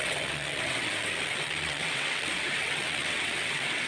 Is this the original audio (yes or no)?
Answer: no